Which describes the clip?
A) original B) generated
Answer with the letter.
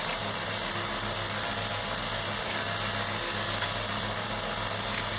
A